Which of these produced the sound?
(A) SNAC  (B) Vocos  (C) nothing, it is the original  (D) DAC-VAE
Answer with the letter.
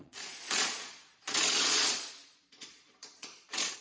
B